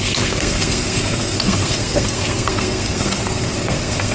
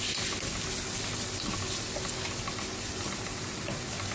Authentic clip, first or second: second